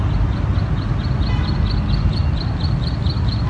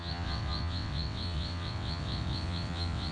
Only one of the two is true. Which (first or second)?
first